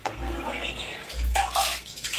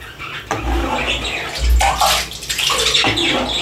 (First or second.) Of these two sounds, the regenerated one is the first